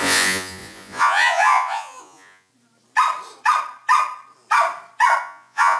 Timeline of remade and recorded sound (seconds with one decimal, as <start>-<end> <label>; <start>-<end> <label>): 0.0-2.5 remade; 2.5-5.2 recorded; 5.2-5.8 remade